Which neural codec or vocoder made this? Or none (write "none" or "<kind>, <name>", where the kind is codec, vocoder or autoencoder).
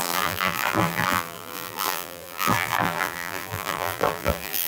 vocoder, BigVGAN v2